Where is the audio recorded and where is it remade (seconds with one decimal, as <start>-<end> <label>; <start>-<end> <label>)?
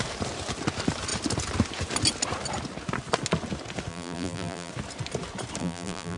0.0-3.9 recorded; 3.9-4.7 remade; 4.7-5.6 recorded; 5.6-6.2 remade